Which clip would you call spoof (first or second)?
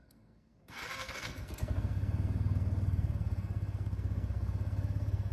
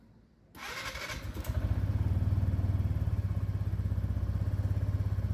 first